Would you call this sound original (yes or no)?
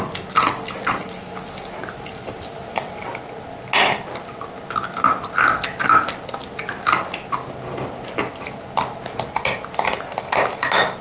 yes